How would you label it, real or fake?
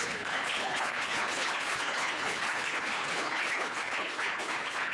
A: fake